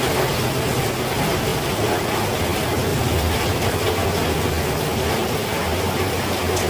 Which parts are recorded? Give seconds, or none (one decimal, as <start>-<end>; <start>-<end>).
0.0-1.5; 2.2-2.9; 3.9-6.7